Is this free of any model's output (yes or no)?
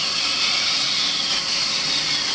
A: yes